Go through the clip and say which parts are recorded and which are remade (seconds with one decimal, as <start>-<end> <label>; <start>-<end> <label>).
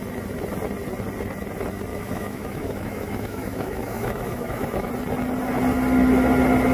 0.0-1.9 recorded; 1.9-4.9 remade; 4.9-6.7 recorded